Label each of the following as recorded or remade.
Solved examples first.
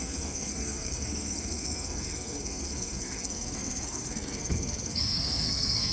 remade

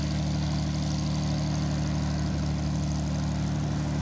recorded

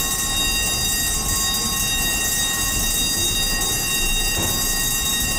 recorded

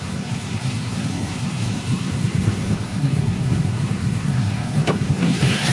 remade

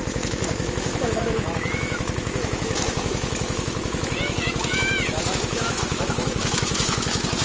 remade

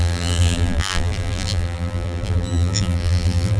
remade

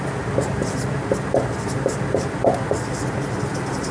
recorded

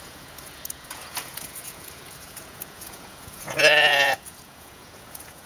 remade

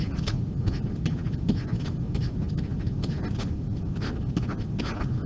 recorded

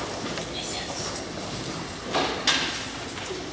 recorded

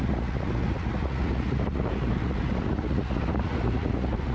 remade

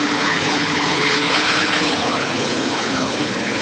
remade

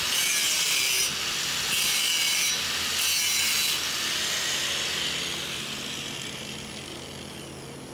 recorded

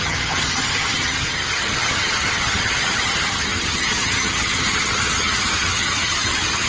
remade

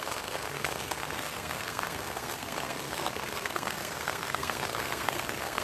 remade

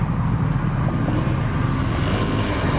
recorded